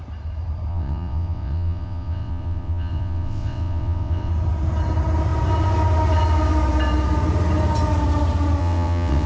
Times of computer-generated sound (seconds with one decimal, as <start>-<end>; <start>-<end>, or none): 0.7-4.3; 8.6-9.3